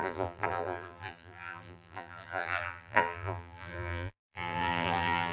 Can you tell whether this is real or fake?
fake